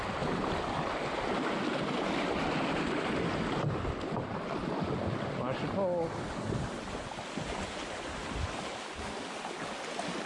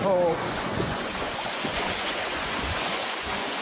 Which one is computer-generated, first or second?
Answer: second